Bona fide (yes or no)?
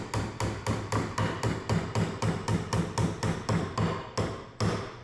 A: yes